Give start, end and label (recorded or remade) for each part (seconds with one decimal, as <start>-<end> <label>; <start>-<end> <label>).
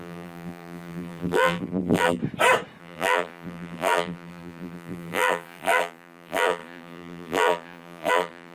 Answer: 0.0-2.2 remade; 2.2-2.8 recorded; 2.8-8.5 remade